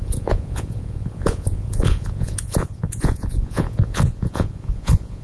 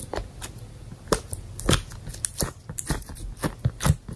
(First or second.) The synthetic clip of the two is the first